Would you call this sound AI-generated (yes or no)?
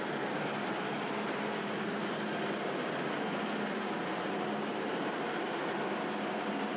no